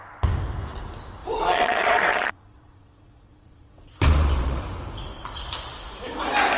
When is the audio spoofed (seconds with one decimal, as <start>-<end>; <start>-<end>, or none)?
1.2-4.6